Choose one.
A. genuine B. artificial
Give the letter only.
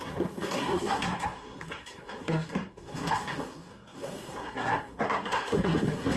B